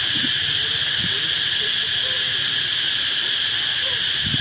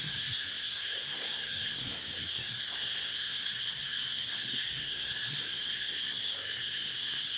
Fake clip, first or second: second